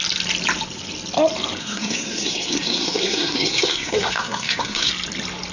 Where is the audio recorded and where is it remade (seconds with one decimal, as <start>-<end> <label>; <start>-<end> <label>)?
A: 0.0-1.6 recorded; 1.6-4.9 remade; 4.9-5.5 recorded